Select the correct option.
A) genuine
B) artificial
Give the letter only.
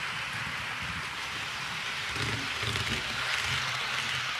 A